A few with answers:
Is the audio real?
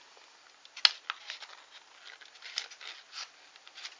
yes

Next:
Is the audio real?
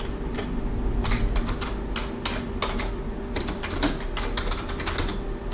yes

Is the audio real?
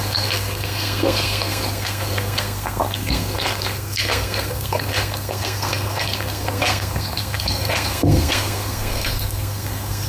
no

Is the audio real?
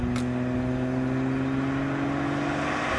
yes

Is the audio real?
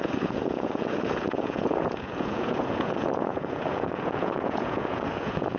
no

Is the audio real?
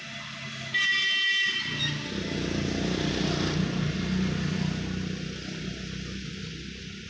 yes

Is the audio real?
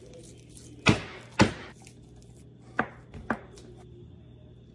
yes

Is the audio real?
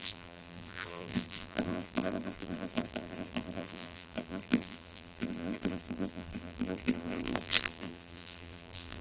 no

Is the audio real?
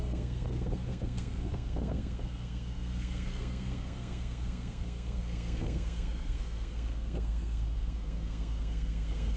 no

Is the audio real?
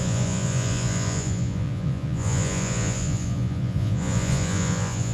no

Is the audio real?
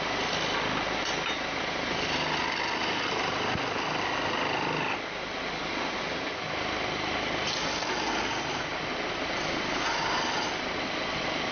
yes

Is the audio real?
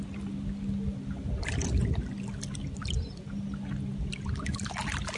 yes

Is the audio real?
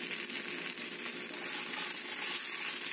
yes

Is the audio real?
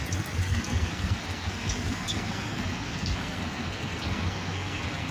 no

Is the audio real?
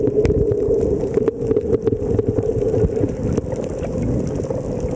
yes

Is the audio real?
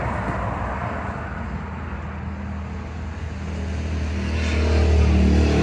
yes